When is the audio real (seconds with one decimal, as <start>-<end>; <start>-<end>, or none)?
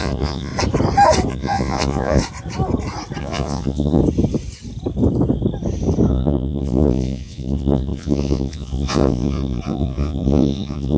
0.5-1.3; 2.2-3.2; 4.0-6.1